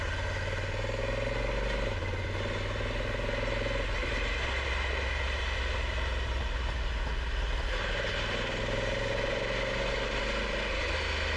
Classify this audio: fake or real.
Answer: real